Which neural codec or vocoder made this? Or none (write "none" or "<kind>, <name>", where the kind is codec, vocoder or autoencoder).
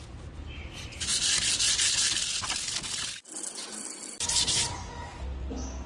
none